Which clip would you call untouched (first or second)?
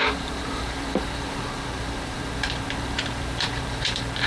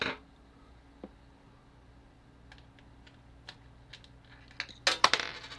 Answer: second